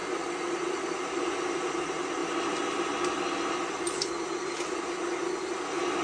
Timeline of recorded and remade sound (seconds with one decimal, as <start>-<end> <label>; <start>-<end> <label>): 0.0-6.0 recorded